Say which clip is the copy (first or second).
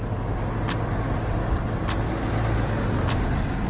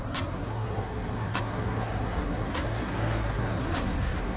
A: second